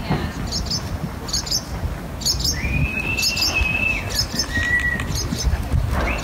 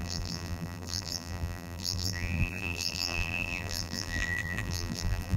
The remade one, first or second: second